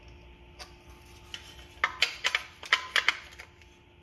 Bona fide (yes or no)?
yes